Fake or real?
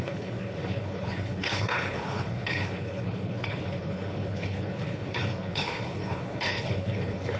fake